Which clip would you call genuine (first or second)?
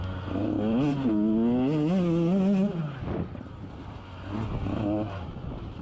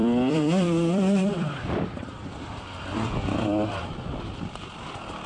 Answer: first